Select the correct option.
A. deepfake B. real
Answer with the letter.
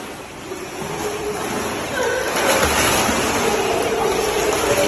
B